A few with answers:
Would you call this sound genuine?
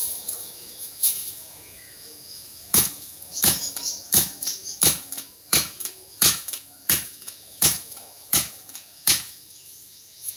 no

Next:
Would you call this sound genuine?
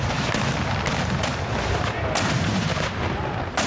yes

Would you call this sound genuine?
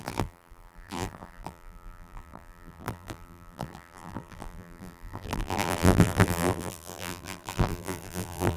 no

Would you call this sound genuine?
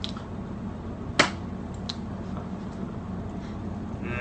yes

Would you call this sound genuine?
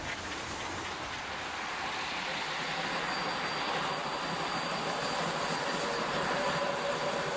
yes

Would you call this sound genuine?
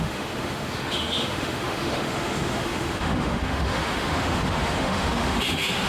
no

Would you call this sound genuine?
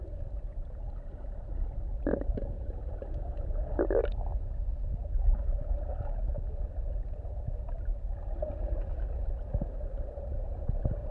yes